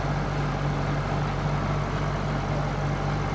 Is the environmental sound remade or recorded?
recorded